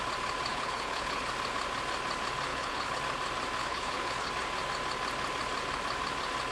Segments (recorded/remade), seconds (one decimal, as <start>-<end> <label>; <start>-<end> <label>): 0.0-0.5 recorded; 0.5-1.3 remade; 1.3-2.5 recorded; 2.5-3.0 remade; 3.0-3.6 recorded; 3.6-4.3 remade; 4.3-6.5 recorded